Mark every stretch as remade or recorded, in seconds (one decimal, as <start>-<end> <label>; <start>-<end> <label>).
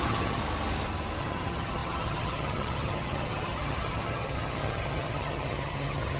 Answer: 0.0-0.4 remade; 0.4-1.2 recorded; 1.2-6.2 remade